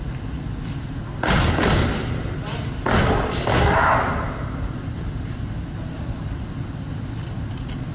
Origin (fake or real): real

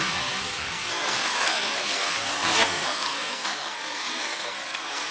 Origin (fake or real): fake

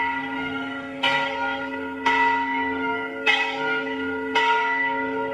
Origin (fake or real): fake